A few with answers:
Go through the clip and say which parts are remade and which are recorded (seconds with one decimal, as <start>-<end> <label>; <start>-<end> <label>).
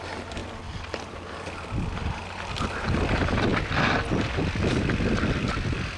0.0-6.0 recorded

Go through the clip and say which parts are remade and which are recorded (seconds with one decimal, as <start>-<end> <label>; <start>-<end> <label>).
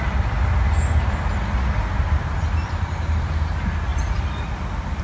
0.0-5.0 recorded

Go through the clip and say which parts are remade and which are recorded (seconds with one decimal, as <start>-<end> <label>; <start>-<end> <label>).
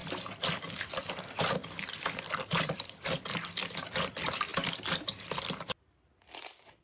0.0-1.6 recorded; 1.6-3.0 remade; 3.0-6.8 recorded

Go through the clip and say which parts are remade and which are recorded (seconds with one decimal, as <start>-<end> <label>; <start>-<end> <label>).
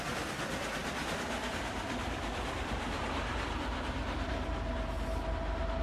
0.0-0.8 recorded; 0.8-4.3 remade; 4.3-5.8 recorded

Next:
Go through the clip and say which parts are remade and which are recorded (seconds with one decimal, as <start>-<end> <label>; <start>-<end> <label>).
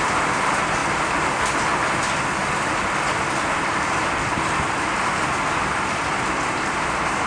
0.0-0.8 recorded; 0.8-1.9 remade; 1.9-7.3 recorded